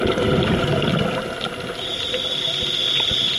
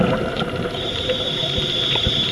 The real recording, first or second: first